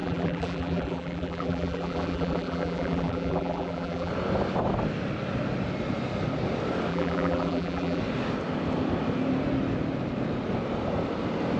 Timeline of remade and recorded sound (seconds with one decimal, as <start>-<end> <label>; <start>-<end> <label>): 0.0-4.1 remade; 4.1-6.9 recorded; 6.9-8.0 remade; 8.0-11.6 recorded